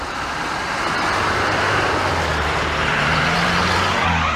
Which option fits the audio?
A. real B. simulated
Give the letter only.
B